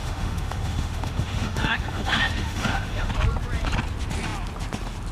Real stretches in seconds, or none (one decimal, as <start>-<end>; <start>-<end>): 3.1-5.1